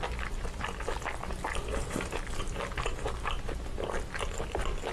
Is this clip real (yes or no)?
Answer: yes